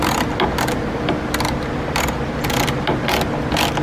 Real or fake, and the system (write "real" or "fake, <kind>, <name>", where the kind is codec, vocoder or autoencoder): real